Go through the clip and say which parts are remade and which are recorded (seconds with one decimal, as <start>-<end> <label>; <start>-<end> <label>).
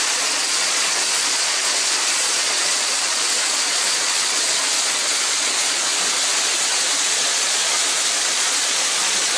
0.0-5.9 remade; 5.9-7.0 recorded; 7.0-7.8 remade; 7.8-8.3 recorded; 8.3-9.4 remade